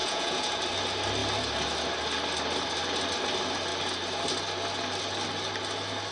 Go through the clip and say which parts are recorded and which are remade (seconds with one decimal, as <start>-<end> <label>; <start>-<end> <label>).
0.0-0.6 remade; 0.6-6.1 recorded